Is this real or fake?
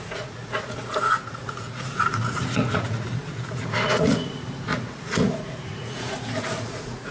fake